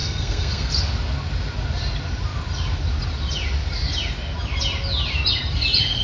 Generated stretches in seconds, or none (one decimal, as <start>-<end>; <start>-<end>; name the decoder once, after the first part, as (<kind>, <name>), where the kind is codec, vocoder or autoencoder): 0.0-0.7 (codec, SNAC)